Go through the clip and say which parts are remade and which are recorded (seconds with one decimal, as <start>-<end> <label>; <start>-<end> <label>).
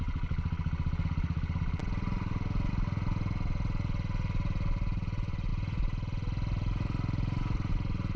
0.0-8.2 recorded